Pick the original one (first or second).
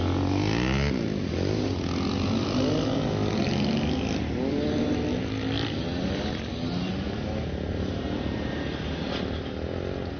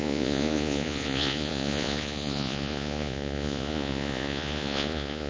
first